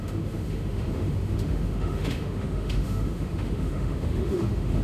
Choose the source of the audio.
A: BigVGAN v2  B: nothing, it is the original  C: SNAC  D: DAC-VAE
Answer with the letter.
D